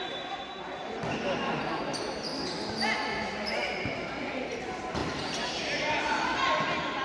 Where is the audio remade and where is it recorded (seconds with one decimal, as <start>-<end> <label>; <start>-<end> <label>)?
0.0-0.8 recorded; 0.8-2.1 remade; 2.1-5.0 recorded; 5.0-5.9 remade; 5.9-7.0 recorded